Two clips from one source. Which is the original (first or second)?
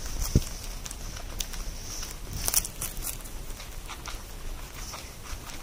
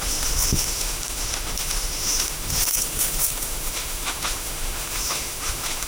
first